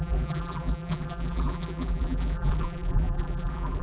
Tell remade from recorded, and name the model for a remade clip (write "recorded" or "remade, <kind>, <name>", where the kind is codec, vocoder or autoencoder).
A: remade, vocoder, BigVGAN v2